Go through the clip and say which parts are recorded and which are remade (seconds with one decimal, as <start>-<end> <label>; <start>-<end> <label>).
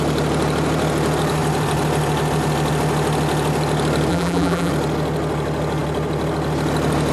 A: 0.0-4.1 recorded; 4.1-4.7 remade; 4.7-7.1 recorded